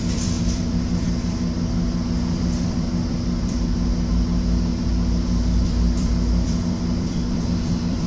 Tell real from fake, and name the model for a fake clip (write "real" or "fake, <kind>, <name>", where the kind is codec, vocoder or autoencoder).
fake, vocoder, BigVGAN v2